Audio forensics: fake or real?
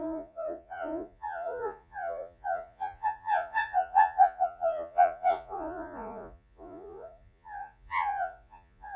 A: fake